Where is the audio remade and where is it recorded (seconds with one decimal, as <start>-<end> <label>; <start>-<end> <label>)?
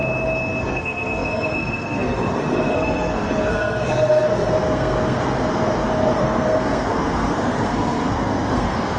0.0-0.6 recorded; 0.6-9.0 remade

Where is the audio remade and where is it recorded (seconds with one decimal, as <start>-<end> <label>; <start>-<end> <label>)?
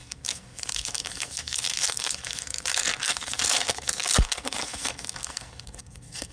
0.0-6.3 remade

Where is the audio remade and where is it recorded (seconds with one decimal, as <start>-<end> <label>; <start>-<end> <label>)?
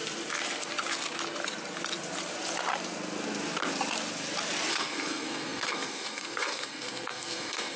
0.0-4.7 recorded; 4.7-7.8 remade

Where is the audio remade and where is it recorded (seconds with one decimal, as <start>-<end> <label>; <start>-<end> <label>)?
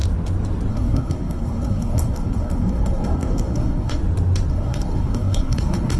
0.0-0.7 recorded; 0.7-4.0 remade; 4.0-4.5 recorded; 4.5-6.0 remade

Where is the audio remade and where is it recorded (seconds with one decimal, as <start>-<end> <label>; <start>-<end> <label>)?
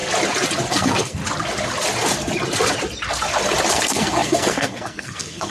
0.0-0.7 recorded; 0.7-1.2 remade; 1.2-3.7 recorded; 3.7-5.5 remade